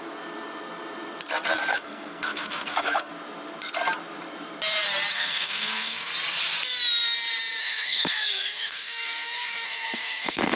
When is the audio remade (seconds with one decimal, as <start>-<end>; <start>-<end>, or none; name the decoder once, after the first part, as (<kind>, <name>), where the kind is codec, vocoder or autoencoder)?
1.7-3.1 (codec, SNAC); 5.1-6.1; 7.6-10.6